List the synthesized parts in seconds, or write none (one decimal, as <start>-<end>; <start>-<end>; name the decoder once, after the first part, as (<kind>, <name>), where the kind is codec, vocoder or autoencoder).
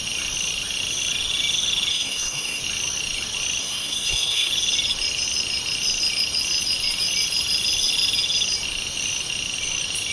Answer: 1.9-2.6 (codec, SNAC); 3.6-4.5